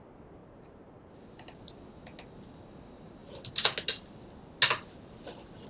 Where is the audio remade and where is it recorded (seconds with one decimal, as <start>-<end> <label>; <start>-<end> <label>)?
0.0-0.4 recorded; 0.4-1.6 remade; 1.6-5.7 recorded